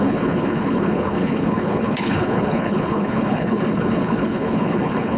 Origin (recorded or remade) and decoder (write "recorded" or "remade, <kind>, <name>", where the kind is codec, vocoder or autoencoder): remade, codec, HILCodec